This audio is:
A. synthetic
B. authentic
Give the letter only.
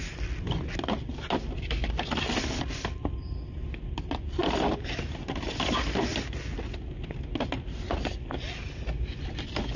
B